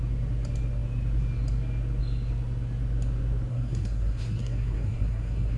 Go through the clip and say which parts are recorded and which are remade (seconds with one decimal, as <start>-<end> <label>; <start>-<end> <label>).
0.0-3.5 recorded; 3.5-5.6 remade